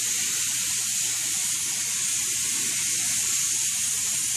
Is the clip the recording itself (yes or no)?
yes